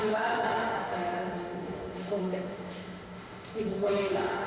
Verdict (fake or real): fake